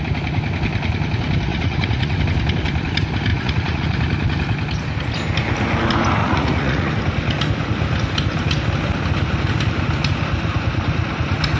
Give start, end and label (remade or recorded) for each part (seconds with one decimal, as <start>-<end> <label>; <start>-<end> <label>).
0.0-1.5 recorded; 1.5-2.2 remade; 2.2-3.3 recorded; 3.3-3.8 remade; 3.8-6.2 recorded; 6.2-6.9 remade; 6.9-11.6 recorded

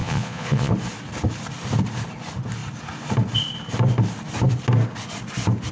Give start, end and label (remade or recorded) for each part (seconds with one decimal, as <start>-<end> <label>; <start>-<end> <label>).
0.0-0.7 remade; 0.7-5.7 recorded

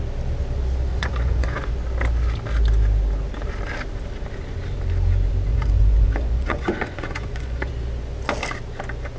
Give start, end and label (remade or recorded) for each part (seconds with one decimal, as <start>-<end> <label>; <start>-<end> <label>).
0.0-0.9 recorded; 0.9-1.7 remade; 1.7-5.5 recorded; 5.5-7.7 remade; 7.7-9.2 recorded

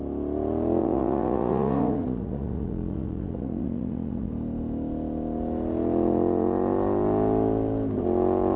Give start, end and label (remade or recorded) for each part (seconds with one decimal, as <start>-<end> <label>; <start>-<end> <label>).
0.0-0.8 recorded; 0.8-4.3 remade; 4.3-8.6 recorded

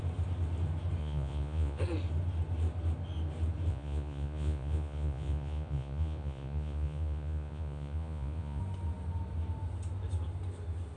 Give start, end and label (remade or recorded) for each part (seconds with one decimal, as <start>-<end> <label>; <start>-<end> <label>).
0.0-1.0 recorded; 1.0-1.8 remade; 1.8-3.7 recorded; 3.7-8.6 remade; 8.6-11.0 recorded